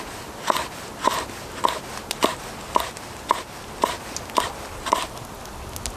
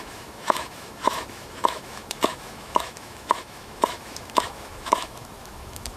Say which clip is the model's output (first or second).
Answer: second